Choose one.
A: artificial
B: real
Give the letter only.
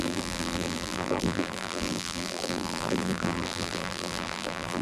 A